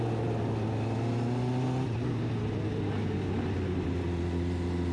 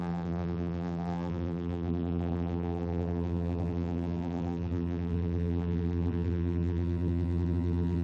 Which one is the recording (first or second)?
first